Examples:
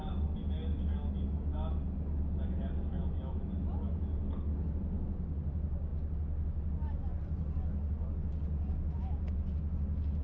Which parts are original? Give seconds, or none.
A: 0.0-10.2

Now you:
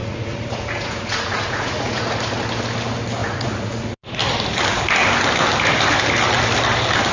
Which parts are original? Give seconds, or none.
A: 2.0-3.2; 4.2-7.1

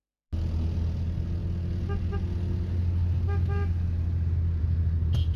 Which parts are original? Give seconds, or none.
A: 0.0-5.4

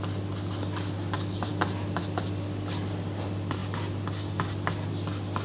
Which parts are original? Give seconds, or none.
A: 0.0-5.4

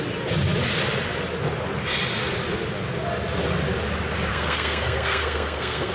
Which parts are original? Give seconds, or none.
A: 0.0-4.3